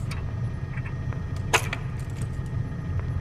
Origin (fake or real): real